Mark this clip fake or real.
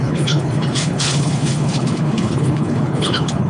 fake